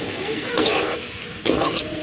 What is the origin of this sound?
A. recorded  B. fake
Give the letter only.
B